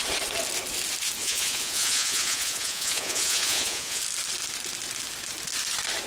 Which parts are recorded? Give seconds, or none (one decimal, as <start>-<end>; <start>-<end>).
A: 0.0-1.2; 4.0-6.1